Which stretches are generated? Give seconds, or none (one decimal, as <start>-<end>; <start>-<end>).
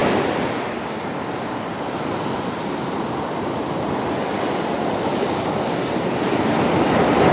none